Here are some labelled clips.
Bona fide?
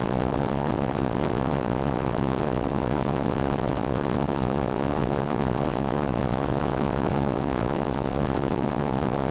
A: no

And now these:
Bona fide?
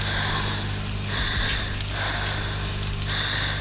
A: yes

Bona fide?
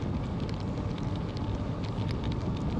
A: yes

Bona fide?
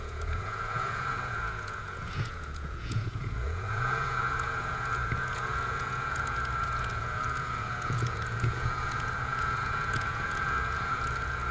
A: no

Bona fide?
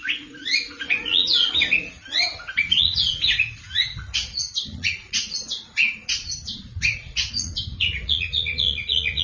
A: no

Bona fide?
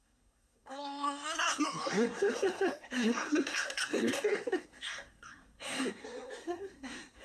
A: no